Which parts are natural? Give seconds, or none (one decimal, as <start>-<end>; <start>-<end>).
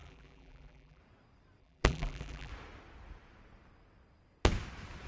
1.0-1.6; 2.5-5.1